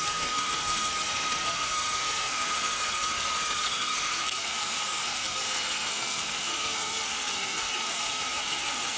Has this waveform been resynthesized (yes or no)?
yes